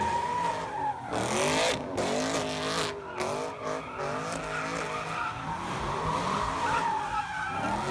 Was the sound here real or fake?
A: real